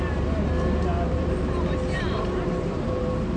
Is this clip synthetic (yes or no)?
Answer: yes